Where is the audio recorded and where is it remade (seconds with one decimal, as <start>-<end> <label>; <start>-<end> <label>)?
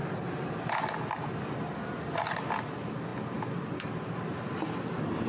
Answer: 0.0-5.3 recorded